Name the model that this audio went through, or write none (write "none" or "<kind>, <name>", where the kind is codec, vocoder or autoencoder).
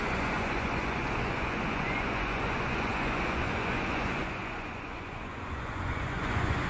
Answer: vocoder, Vocos